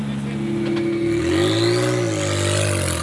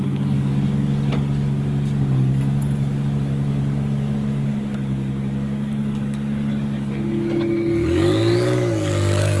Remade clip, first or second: second